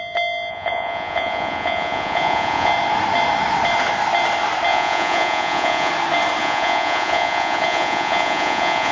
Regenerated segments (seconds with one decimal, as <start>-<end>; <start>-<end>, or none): 0.5-2.7; 4.7-5.9; 6.4-8.9